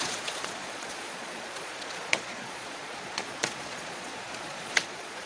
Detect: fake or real fake